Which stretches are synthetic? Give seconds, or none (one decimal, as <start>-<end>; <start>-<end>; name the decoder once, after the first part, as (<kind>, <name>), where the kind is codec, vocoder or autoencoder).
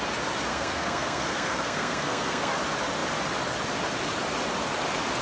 0.5-2.5 (codec, SNAC)